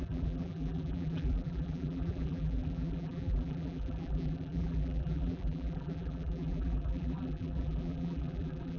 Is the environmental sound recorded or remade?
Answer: remade